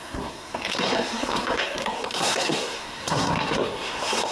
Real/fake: fake